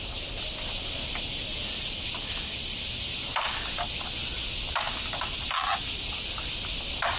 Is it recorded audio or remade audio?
recorded